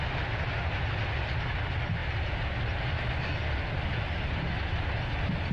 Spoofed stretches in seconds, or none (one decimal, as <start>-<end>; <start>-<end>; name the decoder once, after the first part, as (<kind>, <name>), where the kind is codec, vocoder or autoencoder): none